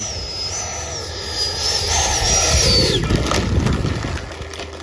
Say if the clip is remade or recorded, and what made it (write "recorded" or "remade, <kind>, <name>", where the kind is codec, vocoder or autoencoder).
recorded